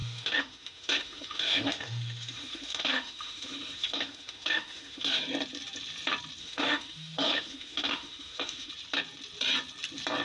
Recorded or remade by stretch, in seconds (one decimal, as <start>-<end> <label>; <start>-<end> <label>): 0.0-5.2 remade; 5.2-6.4 recorded; 6.4-8.7 remade; 8.7-10.2 recorded